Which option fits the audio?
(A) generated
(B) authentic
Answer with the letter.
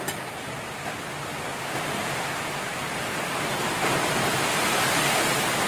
B